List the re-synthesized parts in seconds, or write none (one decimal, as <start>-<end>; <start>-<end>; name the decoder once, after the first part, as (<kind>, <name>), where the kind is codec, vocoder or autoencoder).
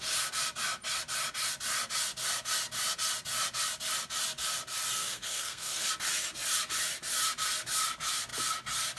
5.0-5.9 (codec, SNAC)